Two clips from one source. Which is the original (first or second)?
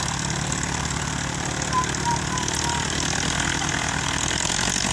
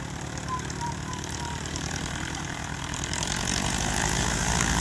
first